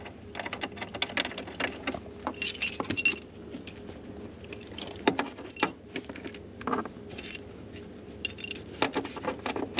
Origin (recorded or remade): recorded